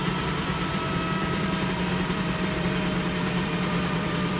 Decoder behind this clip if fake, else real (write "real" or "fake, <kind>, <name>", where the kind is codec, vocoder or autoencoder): fake, vocoder, BigVGAN v2